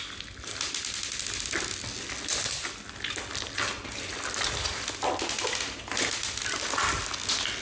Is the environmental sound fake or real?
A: real